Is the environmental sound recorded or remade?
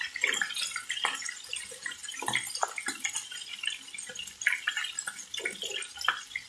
recorded